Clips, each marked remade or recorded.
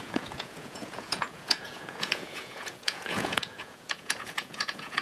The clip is remade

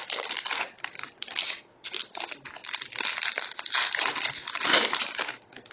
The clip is recorded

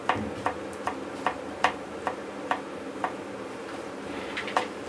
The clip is recorded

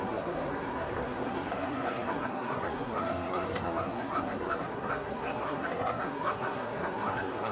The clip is remade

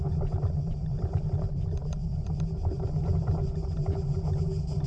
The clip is recorded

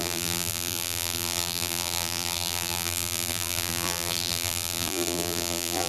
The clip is remade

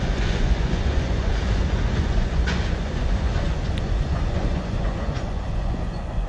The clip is remade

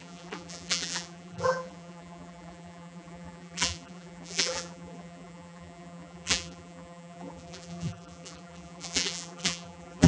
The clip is remade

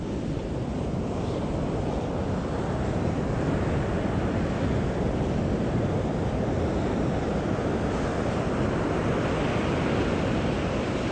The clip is recorded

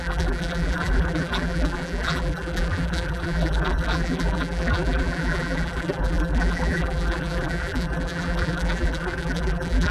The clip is remade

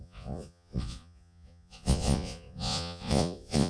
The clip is remade